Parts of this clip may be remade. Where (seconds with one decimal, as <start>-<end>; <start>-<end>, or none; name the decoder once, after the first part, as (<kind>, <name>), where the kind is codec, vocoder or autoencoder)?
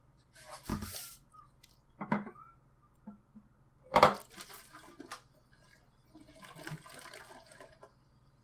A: none